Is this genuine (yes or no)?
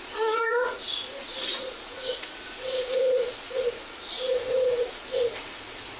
no